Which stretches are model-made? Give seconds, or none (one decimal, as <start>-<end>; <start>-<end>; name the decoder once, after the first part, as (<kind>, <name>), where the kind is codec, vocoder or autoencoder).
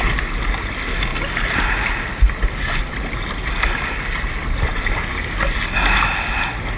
none